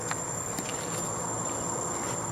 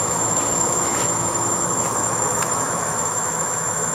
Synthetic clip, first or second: second